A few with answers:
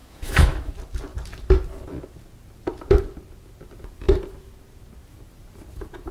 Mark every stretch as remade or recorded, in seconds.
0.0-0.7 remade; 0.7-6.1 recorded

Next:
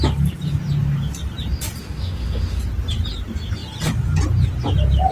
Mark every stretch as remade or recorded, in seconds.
0.0-1.8 recorded; 1.8-2.6 remade; 2.6-5.1 recorded

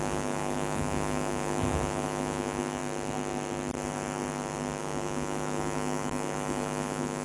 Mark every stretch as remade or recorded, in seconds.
0.0-2.8 remade; 2.8-4.8 recorded; 4.8-7.2 remade

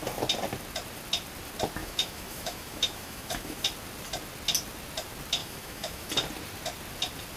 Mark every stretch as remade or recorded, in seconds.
0.0-1.8 recorded; 1.8-3.6 remade; 3.6-5.4 recorded; 5.4-6.1 remade; 6.1-7.4 recorded

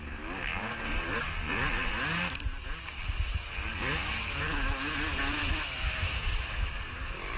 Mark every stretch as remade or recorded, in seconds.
0.0-5.4 recorded; 5.4-6.7 remade; 6.7-7.4 recorded

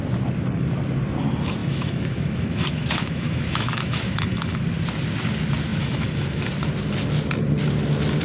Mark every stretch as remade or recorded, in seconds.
0.0-1.6 recorded; 1.6-4.6 remade; 4.6-5.7 recorded; 5.7-6.5 remade; 6.5-8.2 recorded

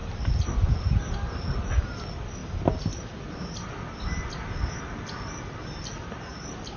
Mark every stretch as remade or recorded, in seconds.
0.0-6.8 recorded

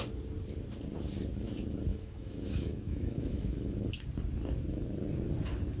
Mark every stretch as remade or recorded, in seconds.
0.0-1.9 recorded; 1.9-3.9 remade; 3.9-5.8 recorded